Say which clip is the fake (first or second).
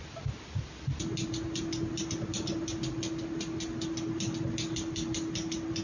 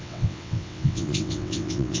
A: second